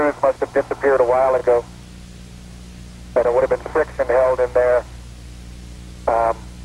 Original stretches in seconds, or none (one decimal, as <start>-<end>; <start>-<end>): 0.0-6.6

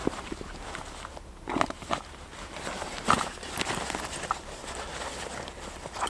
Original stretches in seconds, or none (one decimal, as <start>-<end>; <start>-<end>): 3.7-6.1